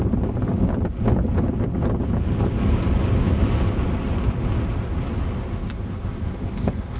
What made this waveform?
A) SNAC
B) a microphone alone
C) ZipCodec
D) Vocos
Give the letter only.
B